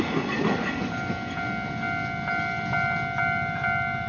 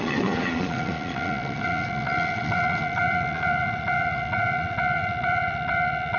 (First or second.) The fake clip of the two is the second